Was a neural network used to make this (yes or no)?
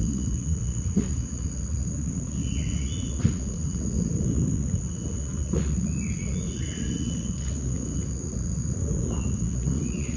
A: yes